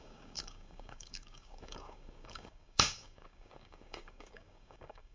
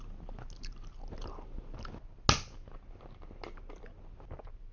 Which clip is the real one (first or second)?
second